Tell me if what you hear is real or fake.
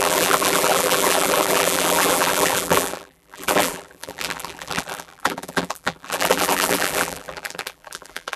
fake